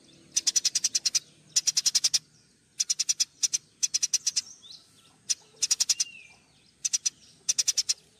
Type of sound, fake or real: real